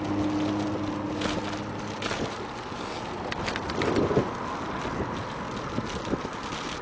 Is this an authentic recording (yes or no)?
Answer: yes